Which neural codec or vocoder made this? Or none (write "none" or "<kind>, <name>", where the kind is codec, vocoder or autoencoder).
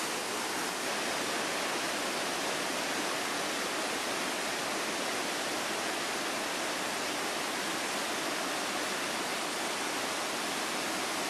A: none